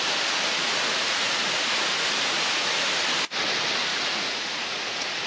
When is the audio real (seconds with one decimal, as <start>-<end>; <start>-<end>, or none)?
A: 0.0-0.6; 2.7-3.9